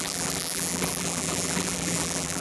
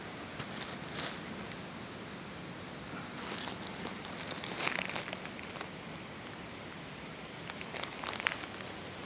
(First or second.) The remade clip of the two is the first